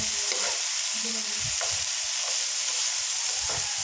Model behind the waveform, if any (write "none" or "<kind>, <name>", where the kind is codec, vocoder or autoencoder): none